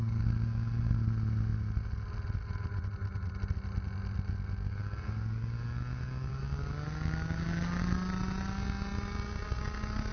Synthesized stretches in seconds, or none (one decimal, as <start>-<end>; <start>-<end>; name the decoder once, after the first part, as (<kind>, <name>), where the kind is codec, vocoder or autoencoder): none